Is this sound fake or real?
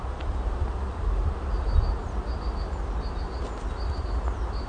real